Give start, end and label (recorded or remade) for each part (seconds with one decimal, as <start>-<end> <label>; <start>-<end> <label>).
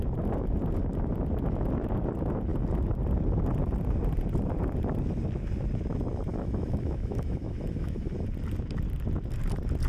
0.0-6.3 recorded; 6.3-8.1 remade; 8.1-9.9 recorded